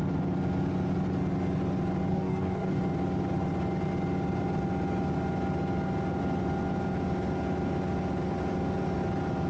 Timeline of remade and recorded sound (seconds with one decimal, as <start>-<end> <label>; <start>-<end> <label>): 0.0-2.1 recorded; 2.1-2.8 remade; 2.8-9.5 recorded